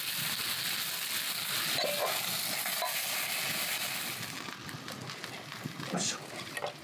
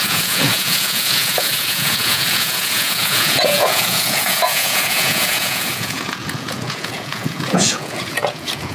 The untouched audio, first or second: first